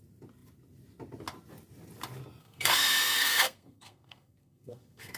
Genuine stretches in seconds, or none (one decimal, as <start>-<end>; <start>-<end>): 0.0-2.4

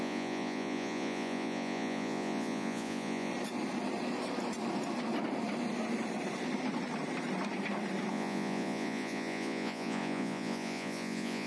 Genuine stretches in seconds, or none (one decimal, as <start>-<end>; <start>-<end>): 3.3-8.1

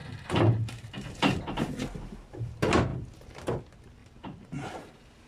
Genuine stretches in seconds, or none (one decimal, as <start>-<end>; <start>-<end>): 1.4-4.0; 4.7-5.3

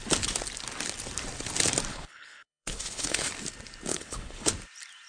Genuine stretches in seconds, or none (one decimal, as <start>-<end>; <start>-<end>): 0.0-1.9; 3.3-3.9; 4.5-5.1